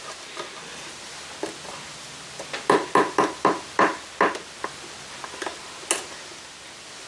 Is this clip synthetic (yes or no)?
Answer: no